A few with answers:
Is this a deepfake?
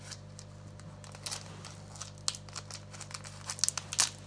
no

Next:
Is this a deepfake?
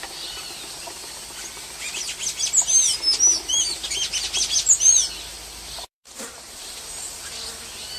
no